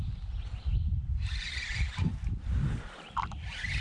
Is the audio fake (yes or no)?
yes